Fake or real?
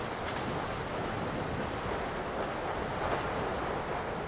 real